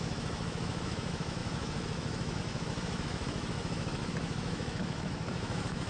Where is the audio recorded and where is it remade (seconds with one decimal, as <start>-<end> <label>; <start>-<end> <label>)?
0.0-5.9 remade